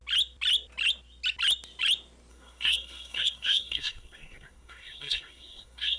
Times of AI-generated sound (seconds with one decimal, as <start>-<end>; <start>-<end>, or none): 2.3-6.0